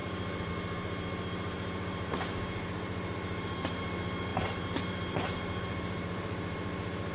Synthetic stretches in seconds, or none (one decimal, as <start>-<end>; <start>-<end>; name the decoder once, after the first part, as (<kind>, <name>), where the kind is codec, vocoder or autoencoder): 0.0-7.1 (vocoder, BigVGAN v2)